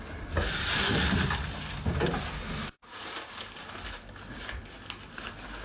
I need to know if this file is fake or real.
real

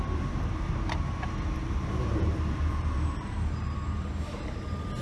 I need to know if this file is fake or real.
fake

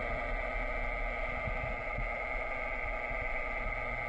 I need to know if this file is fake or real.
real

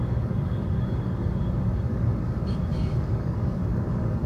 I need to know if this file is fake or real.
fake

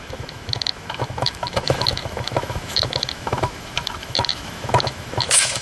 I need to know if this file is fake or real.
fake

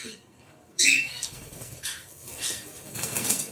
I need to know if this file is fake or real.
fake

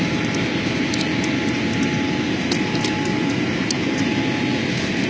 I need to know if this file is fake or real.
real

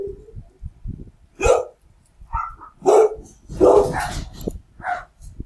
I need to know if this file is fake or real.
real